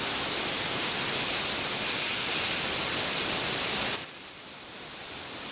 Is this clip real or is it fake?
real